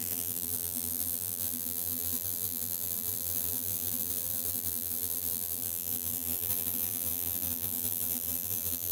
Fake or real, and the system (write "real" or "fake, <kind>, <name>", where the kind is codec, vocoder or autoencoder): fake, vocoder, BigVGAN v2